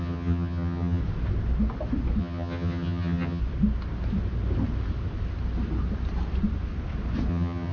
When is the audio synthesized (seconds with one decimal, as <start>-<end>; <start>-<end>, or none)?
0.0-1.0; 2.2-3.4; 7.3-7.7